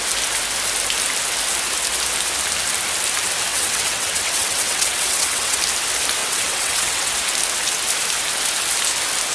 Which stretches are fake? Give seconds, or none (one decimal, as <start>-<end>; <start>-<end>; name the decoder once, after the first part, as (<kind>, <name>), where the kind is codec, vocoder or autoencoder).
3.5-5.6 (vocoder, WaveNeXt); 6.2-7.1